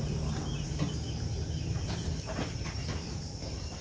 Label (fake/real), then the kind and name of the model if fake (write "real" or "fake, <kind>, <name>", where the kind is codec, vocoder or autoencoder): fake, vocoder, BigVGAN v2